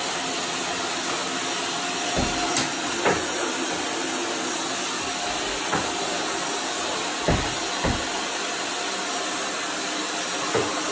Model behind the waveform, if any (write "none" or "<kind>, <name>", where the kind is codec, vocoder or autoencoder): none